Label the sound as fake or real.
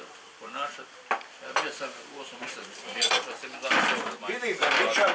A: real